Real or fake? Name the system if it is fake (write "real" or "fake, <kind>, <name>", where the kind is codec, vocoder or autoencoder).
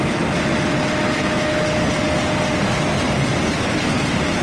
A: real